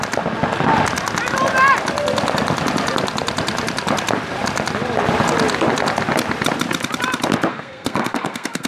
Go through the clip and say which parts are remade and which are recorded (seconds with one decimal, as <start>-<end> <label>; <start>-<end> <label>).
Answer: 0.0-7.5 recorded; 7.5-8.7 remade